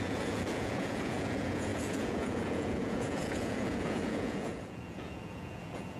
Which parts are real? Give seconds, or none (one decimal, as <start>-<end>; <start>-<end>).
none